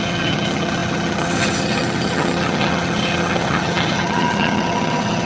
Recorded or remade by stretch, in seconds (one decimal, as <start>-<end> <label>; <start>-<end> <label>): 0.0-5.3 remade